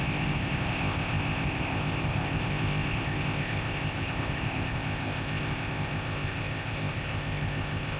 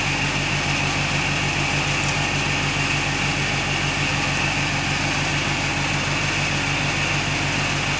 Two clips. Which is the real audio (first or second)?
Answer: second